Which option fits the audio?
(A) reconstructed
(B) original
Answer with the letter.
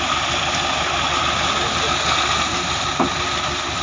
B